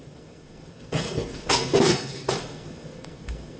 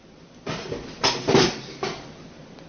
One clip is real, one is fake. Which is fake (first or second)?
first